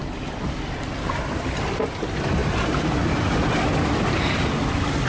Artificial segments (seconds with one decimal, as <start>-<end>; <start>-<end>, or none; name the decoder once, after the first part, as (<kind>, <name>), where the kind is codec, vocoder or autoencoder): none